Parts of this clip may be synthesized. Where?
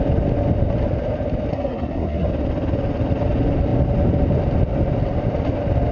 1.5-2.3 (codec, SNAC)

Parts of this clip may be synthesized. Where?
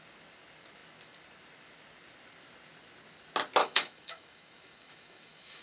3.6-5.6 (autoencoder, DAC-VAE)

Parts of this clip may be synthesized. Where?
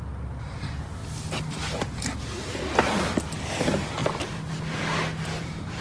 none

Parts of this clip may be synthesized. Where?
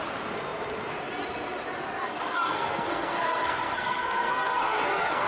2.0-5.3 (codec, SNAC)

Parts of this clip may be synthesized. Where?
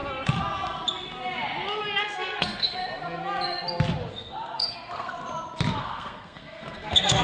2.0-2.8 (codec, SNAC); 4.1-5.2; 5.8-7.2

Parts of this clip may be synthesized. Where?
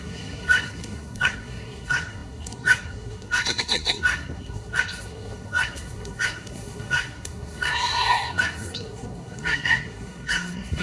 0.0-10.8 (codec, SNAC)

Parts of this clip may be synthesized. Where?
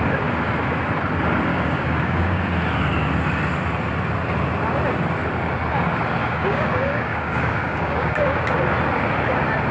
1.5-2.4 (codec, DAC); 6.2-8.4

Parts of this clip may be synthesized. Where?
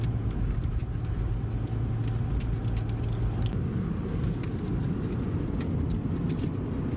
none